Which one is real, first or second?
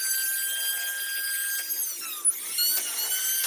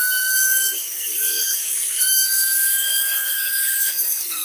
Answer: first